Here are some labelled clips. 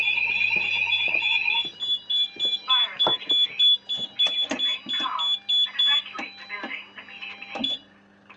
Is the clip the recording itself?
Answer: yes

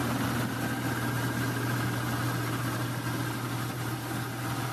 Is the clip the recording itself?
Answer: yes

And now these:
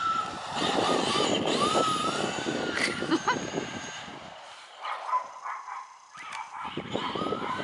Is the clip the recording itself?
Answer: no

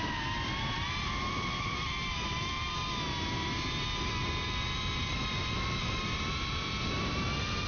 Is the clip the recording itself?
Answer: yes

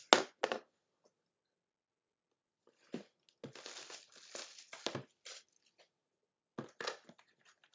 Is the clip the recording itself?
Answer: yes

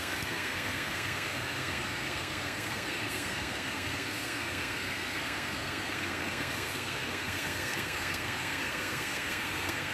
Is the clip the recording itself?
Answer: no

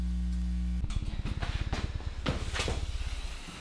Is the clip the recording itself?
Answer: yes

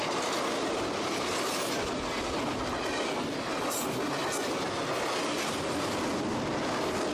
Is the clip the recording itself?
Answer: yes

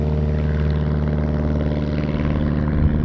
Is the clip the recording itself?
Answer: yes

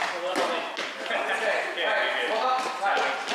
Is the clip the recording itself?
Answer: yes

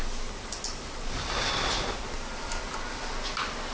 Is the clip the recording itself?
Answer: yes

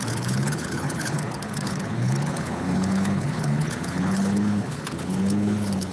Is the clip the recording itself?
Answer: no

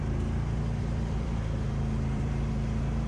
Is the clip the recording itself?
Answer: no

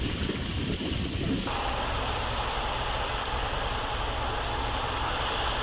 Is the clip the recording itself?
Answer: no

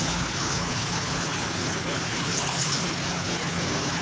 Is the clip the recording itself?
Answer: no